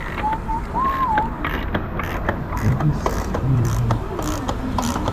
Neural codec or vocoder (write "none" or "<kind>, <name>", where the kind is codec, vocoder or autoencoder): vocoder, BigVGAN v2